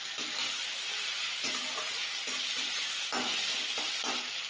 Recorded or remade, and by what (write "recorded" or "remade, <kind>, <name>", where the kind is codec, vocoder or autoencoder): recorded